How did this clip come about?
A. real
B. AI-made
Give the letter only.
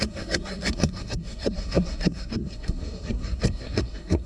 B